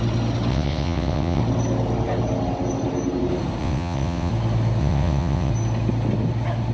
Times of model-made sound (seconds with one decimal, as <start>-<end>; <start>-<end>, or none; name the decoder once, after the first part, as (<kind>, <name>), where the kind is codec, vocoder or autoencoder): 0.5-1.4 (vocoder, WaveNeXt); 3.6-4.3; 4.8-5.5